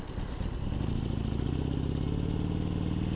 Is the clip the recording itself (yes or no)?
yes